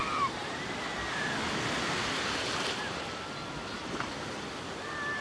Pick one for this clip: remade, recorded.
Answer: recorded